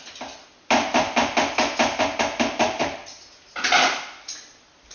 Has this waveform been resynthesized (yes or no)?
no